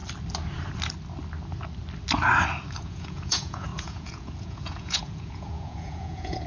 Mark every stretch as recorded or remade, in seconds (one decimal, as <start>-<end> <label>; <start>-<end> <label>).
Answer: 0.0-2.7 recorded; 2.7-6.5 remade